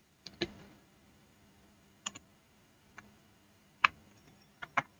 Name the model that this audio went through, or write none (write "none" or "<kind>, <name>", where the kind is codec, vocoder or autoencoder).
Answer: vocoder, BigVGAN v2